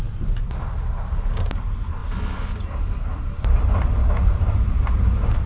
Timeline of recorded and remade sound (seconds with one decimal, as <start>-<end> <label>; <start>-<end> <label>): 0.0-2.0 remade; 2.0-4.1 recorded; 4.1-5.5 remade